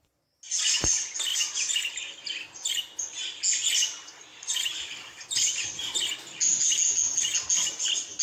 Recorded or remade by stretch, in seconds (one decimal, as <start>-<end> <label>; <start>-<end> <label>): 0.0-1.3 recorded; 1.3-2.7 remade; 2.7-4.3 recorded; 4.3-5.8 remade; 5.8-8.2 recorded